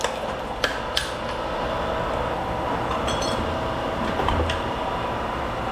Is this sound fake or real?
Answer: real